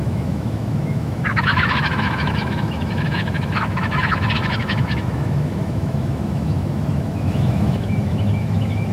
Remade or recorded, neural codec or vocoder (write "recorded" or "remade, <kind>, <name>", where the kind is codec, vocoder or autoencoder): remade, autoencoder, DAC-VAE